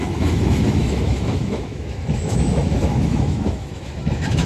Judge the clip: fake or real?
fake